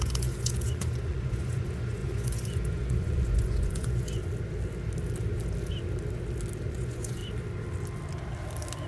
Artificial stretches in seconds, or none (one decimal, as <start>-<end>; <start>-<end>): 0.0-4.2; 6.7-7.2